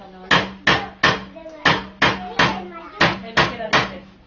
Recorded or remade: recorded